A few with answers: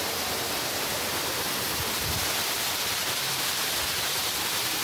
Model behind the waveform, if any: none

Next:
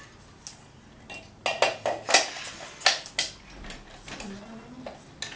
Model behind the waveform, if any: none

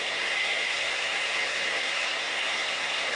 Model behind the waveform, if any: codec, SNAC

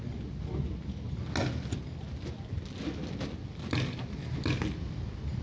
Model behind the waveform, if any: none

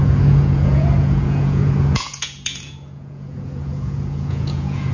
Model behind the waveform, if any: vocoder, Vocos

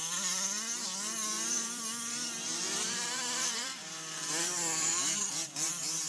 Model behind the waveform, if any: vocoder, BigVGAN v2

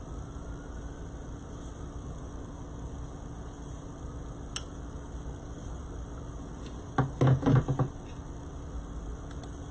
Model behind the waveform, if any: none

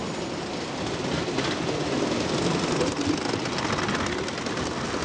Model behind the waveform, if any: none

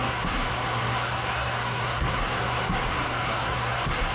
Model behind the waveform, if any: codec, SNAC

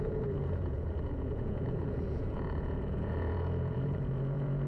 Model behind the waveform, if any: vocoder, Vocos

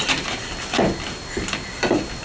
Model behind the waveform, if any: none